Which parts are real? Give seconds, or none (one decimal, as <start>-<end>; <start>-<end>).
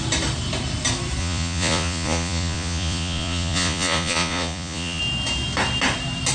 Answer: 0.0-1.2; 5.0-6.3